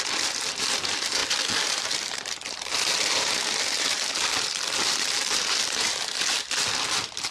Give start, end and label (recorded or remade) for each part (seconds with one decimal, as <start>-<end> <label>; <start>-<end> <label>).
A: 0.0-7.3 remade